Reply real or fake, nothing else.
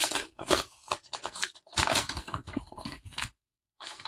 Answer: fake